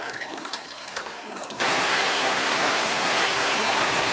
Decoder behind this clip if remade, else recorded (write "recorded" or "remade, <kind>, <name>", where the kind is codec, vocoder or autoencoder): remade, codec, SNAC